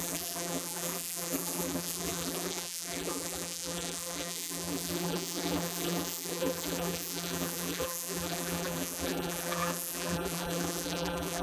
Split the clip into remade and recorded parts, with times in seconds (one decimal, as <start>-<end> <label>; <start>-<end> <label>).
0.0-11.4 remade